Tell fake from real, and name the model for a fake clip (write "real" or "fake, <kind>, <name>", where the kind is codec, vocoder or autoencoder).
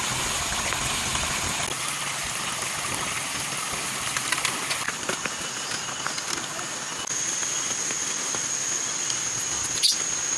real